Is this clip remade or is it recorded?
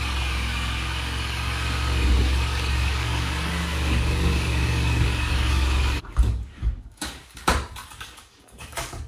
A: remade